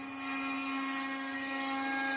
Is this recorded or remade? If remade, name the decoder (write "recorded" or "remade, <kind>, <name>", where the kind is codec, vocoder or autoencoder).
recorded